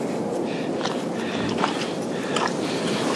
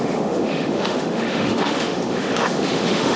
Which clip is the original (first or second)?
first